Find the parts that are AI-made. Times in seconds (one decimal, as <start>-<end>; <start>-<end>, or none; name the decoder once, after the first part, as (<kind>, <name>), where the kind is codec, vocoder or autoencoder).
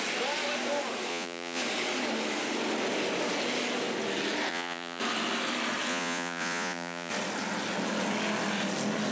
1.1-1.6 (vocoder, Vocos); 4.5-5.0; 5.9-7.1